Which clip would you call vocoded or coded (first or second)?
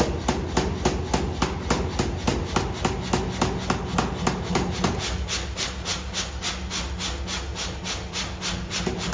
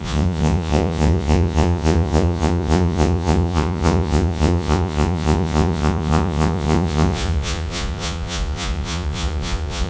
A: second